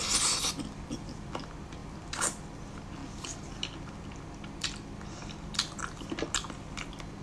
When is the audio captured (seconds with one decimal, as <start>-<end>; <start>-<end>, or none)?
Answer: 0.0-7.2